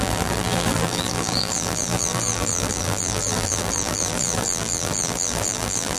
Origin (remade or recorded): remade